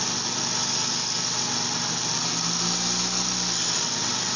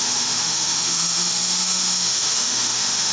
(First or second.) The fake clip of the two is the second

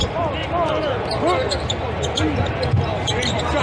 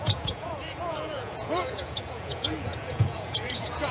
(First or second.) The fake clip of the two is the second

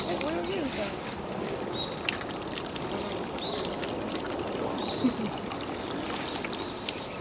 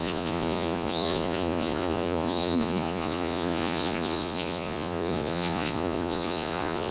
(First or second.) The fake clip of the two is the second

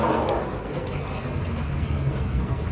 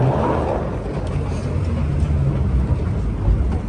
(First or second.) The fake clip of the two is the first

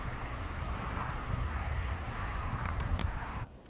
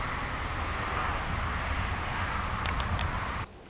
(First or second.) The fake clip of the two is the first